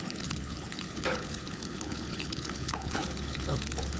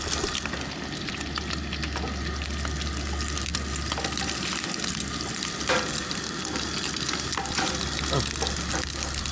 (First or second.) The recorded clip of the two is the second